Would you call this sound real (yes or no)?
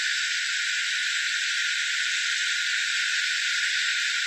yes